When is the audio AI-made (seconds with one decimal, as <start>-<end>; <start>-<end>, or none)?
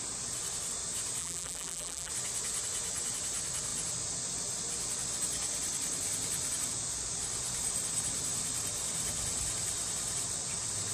1.2-2.1